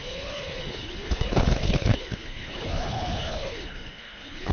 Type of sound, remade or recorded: remade